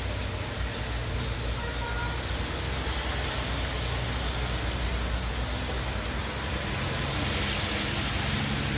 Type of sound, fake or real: real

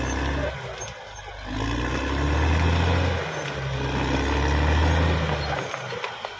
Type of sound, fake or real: real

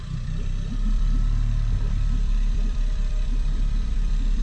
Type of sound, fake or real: fake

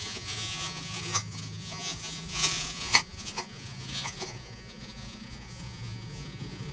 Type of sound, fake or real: fake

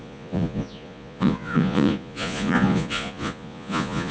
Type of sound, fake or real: fake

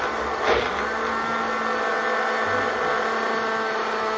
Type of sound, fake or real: real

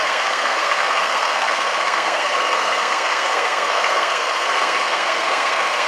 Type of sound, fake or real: fake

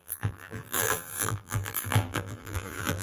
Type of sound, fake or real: fake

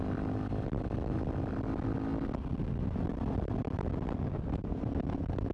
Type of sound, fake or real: real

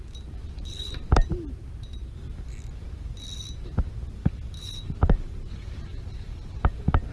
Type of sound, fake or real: real